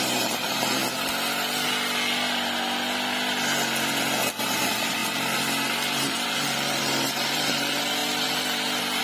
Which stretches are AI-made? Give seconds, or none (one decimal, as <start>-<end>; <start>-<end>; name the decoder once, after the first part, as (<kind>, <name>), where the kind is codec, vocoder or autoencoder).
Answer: 0.0-0.8 (vocoder, BigVGAN v2); 4.4-5.0; 6.0-9.0